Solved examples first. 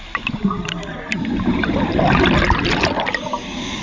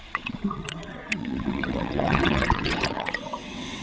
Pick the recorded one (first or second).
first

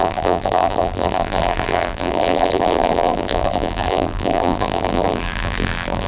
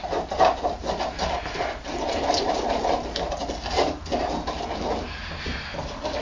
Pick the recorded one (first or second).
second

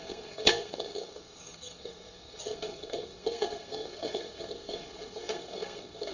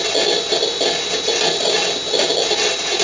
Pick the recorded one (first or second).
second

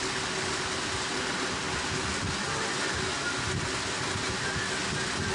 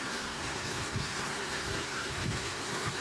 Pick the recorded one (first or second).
first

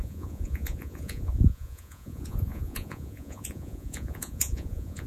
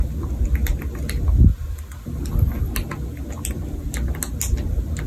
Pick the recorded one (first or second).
second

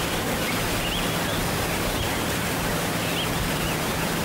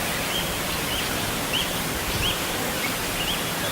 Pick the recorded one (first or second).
first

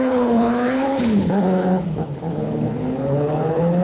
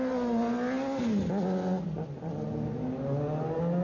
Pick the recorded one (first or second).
second